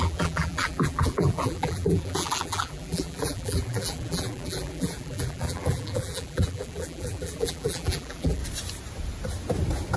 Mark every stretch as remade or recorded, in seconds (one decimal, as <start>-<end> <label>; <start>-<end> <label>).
0.0-8.4 remade; 8.4-10.0 recorded